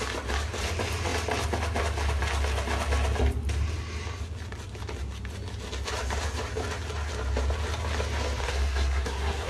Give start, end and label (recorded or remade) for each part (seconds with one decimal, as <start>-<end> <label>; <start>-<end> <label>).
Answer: 0.0-8.4 recorded; 8.4-9.5 remade